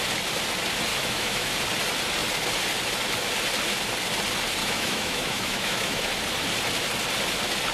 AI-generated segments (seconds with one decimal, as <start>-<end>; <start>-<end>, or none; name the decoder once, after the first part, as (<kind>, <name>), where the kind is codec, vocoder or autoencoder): 0.9-1.5 (autoencoder, DAC-VAE); 4.6-6.1